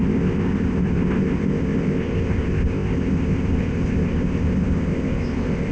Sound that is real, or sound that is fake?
fake